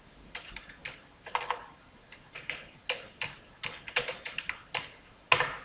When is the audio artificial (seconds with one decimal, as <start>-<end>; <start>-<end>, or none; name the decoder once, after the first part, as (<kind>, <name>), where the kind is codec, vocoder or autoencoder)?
none